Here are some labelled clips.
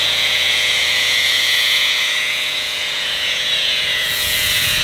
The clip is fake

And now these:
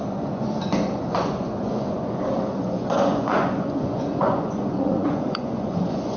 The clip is fake